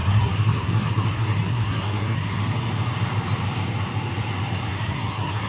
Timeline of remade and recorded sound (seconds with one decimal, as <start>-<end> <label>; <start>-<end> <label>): 0.0-2.4 remade; 2.4-4.7 recorded; 4.7-5.5 remade